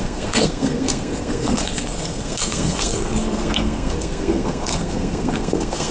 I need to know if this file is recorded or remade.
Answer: remade